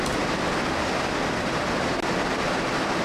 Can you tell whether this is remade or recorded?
recorded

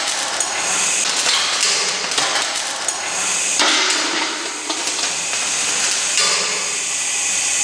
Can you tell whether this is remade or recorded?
recorded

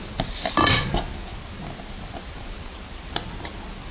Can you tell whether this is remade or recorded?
recorded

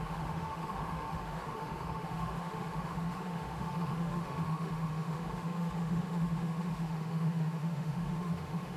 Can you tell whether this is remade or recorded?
remade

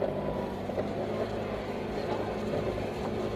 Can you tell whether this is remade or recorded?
recorded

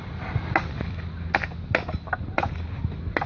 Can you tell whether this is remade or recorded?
recorded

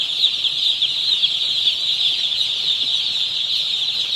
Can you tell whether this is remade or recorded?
recorded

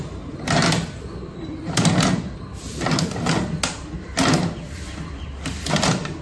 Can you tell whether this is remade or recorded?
recorded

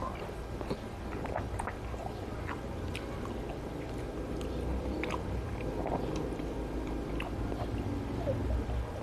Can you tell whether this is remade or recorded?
recorded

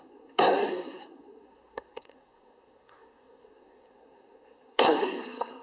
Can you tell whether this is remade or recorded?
remade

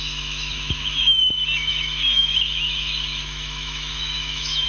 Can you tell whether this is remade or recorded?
remade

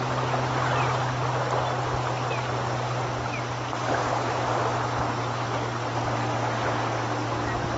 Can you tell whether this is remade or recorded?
recorded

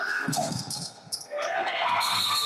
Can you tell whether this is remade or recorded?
remade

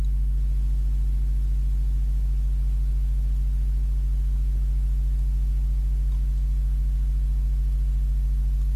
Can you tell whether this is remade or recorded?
recorded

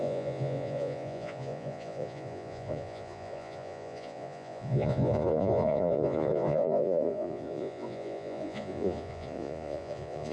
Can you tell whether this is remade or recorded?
remade